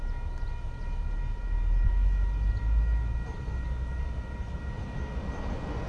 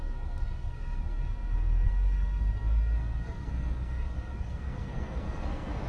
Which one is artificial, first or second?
second